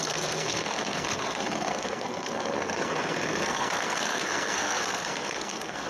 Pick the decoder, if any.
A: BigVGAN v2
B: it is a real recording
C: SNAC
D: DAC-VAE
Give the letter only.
C